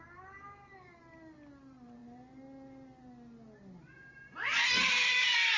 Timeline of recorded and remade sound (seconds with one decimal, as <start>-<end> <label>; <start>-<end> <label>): 0.0-5.6 recorded